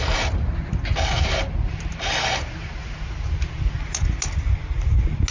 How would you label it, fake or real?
real